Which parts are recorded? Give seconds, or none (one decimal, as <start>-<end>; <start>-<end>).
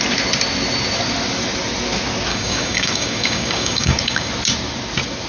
0.0-2.3; 4.3-5.3